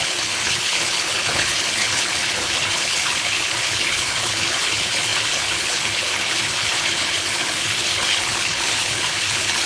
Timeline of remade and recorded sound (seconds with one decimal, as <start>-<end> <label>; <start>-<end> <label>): 0.0-9.7 remade